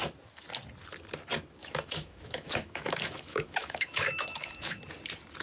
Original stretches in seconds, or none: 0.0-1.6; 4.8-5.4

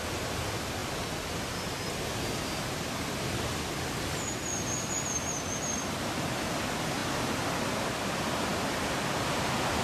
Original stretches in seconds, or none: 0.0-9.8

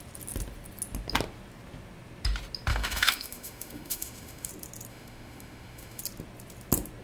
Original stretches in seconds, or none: 0.0-2.7; 4.5-4.9; 6.0-7.0

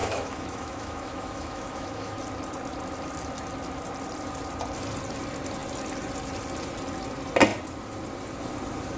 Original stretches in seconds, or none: 2.2-9.0

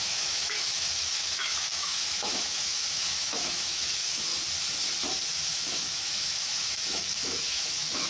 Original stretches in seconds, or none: 4.3-5.5

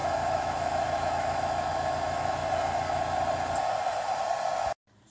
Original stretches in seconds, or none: 2.4-5.1

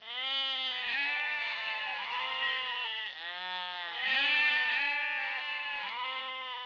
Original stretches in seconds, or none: 0.0-0.8; 4.7-5.5; 6.2-6.7